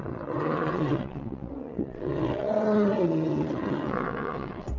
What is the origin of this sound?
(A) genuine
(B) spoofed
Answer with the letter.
B